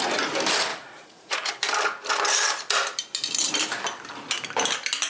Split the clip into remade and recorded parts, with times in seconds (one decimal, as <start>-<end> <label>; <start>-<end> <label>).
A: 0.0-0.7 recorded; 0.7-1.5 remade; 1.5-5.1 recorded